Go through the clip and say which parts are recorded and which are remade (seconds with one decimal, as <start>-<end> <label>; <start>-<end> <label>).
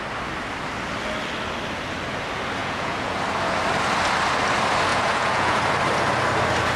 0.0-2.6 recorded; 2.6-3.2 remade; 3.2-4.9 recorded; 4.9-5.6 remade; 5.6-6.8 recorded